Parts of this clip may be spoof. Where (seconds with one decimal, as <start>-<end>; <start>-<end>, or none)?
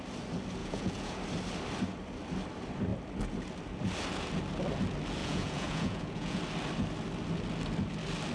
0.6-1.2; 5.2-6.4